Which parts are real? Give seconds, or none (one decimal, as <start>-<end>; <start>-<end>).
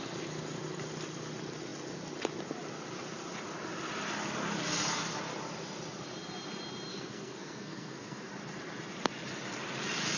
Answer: 0.0-6.9; 8.3-10.2